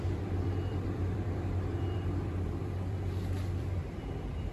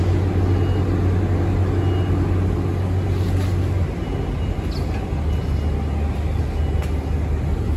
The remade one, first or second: first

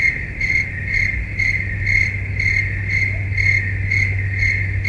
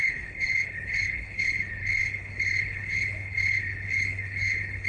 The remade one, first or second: second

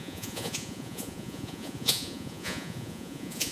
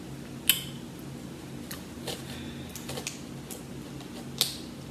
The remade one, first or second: first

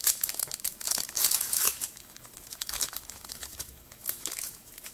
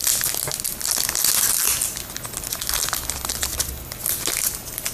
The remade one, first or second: first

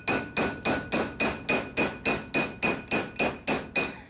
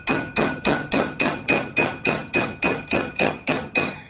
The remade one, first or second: second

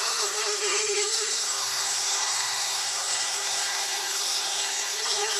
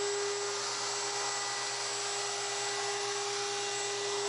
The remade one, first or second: first